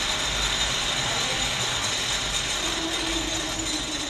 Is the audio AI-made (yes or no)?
no